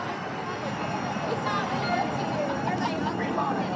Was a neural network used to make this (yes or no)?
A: no